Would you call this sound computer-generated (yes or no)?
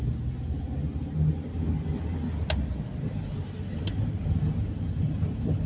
no